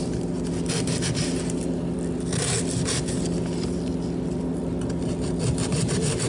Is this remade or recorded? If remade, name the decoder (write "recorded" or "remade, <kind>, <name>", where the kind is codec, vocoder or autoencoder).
recorded